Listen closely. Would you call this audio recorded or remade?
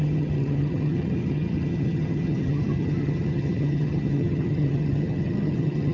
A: remade